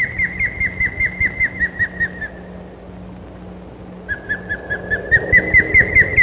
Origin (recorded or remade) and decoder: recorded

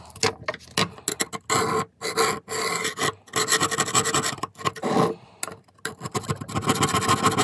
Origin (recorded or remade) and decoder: recorded